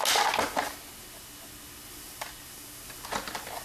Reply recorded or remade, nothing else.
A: recorded